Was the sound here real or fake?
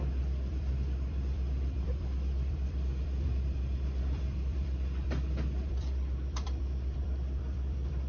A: fake